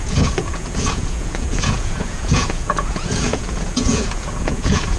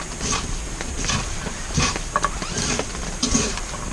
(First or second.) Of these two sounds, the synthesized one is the first